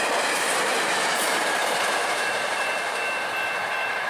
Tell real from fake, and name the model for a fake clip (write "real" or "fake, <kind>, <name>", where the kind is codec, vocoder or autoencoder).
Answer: fake, vocoder, BigVGAN v2